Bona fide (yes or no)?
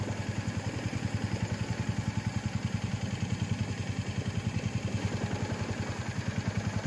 yes